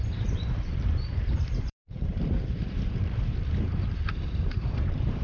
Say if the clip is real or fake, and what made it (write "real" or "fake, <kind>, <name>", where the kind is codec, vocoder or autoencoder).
fake, vocoder, BigVGAN v2